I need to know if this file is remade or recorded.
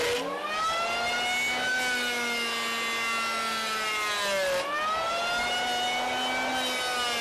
recorded